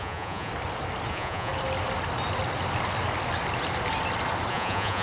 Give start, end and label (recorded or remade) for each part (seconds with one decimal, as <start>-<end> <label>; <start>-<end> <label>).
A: 0.0-0.5 remade; 0.5-1.1 recorded; 1.1-1.5 remade; 1.5-4.5 recorded; 4.5-5.0 remade